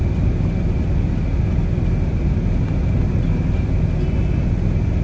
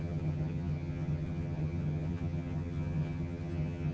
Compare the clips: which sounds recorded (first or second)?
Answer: first